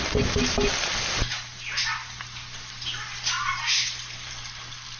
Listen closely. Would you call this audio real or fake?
real